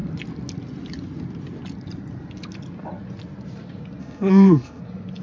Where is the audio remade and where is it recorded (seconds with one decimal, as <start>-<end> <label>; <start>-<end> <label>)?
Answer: 0.0-4.0 recorded; 4.0-4.8 remade; 4.8-5.2 recorded